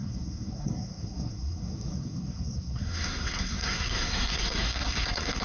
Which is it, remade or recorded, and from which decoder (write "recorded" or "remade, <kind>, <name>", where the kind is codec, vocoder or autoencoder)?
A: remade, codec, SNAC